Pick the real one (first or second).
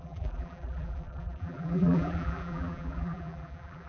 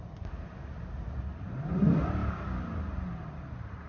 second